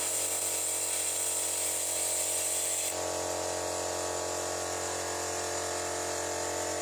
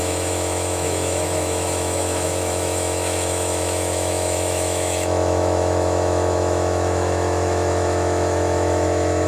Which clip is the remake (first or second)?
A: second